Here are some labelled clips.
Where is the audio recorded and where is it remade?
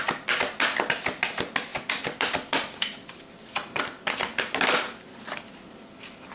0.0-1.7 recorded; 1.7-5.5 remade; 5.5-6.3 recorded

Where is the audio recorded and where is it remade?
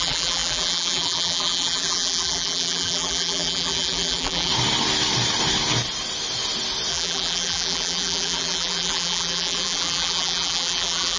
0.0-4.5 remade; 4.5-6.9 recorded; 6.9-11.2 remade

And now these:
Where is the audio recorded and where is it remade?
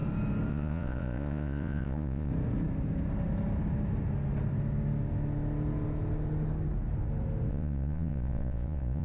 0.0-0.5 recorded; 0.5-2.3 remade; 2.3-7.5 recorded; 7.5-9.0 remade